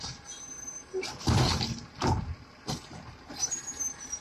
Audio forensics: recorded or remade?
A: recorded